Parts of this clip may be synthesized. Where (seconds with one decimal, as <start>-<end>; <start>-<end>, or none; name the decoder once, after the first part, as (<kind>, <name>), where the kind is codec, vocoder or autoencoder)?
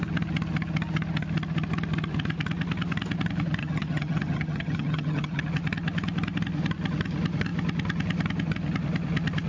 3.6-5.4 (vocoder, HiFi-GAN)